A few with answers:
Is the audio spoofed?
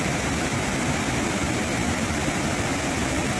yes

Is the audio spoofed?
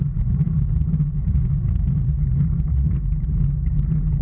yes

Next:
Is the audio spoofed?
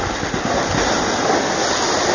no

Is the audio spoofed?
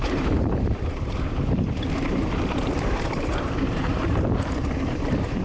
yes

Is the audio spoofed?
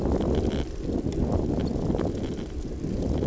yes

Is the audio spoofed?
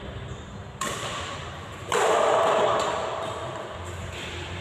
yes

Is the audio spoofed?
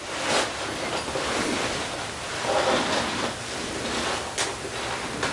no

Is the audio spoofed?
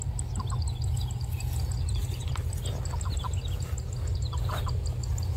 no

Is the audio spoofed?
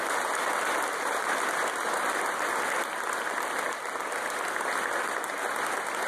no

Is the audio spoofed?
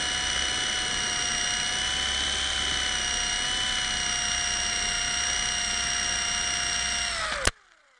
no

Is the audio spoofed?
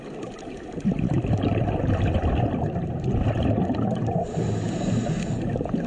no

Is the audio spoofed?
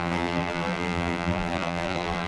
yes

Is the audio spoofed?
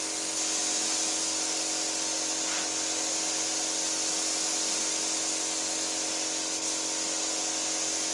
no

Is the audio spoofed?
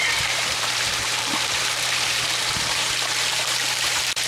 yes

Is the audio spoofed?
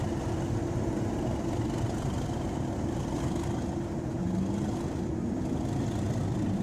no